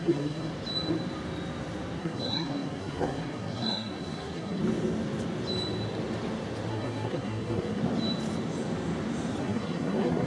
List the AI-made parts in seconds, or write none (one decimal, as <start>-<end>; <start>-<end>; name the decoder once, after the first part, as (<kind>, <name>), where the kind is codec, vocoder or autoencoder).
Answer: 0.0-0.5 (codec, SNAC); 2.0-4.6; 6.7-7.8; 9.4-10.3